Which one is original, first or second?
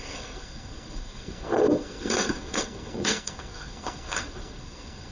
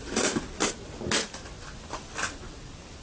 second